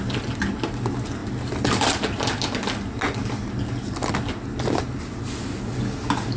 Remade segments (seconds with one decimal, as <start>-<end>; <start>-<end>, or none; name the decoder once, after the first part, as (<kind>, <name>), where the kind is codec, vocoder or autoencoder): none